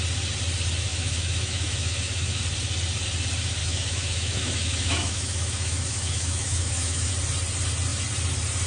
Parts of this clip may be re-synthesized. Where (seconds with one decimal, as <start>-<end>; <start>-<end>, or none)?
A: 0.9-2.4; 3.6-7.1